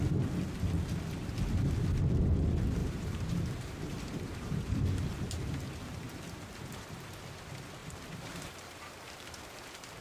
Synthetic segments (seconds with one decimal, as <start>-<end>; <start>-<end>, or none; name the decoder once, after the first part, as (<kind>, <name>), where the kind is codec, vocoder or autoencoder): 2.8-6.9 (vocoder, BigVGAN v2); 7.8-9.6